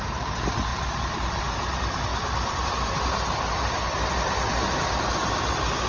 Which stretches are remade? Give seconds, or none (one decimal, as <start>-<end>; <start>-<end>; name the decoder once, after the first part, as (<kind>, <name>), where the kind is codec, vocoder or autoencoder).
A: 0.7-1.4 (vocoder, BigVGAN v2); 2.1-2.7

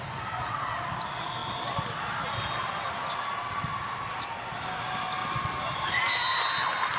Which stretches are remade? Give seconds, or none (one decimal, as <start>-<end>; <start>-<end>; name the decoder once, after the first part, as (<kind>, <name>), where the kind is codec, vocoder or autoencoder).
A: none

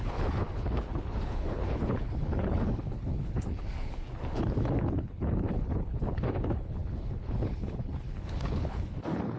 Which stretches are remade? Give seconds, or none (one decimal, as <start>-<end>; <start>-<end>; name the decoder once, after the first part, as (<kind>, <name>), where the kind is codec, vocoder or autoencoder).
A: 0.0-9.4 (codec, HILCodec)

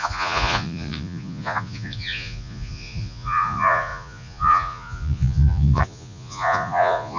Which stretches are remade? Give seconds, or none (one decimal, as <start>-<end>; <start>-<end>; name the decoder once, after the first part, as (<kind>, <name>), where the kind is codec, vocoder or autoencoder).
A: 0.0-7.2 (vocoder, Vocos)

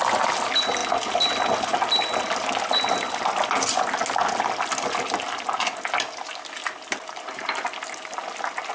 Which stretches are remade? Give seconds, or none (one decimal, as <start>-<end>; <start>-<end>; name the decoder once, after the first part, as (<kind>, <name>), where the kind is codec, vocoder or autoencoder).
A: none

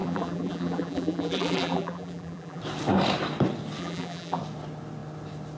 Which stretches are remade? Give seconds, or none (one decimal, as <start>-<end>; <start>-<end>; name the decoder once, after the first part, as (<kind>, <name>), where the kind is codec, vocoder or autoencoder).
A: 0.0-2.6 (vocoder, BigVGAN v2); 3.8-4.4

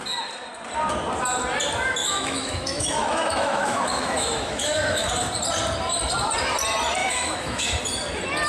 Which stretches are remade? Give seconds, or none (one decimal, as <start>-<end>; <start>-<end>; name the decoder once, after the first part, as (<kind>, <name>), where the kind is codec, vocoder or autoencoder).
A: 2.0-5.1 (autoencoder, DAC-VAE); 7.0-7.8

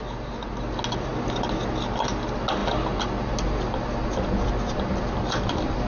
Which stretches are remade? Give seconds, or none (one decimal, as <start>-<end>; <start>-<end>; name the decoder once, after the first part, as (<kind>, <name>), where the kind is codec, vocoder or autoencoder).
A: 2.6-3.3 (vocoder, BigVGAN v2)